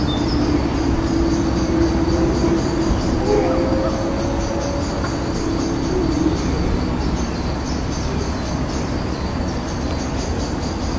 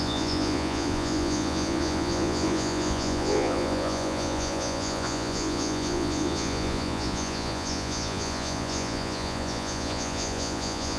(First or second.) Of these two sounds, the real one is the first